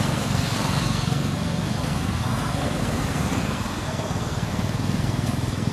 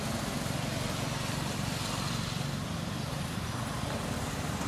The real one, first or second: second